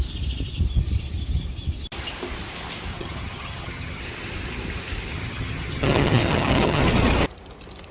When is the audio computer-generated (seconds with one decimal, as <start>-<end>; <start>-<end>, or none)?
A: 2.9-4.0; 5.1-6.8